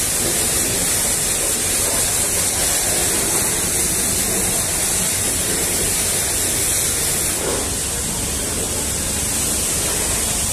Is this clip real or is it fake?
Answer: real